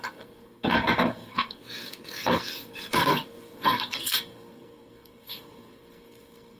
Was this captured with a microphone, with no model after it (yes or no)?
no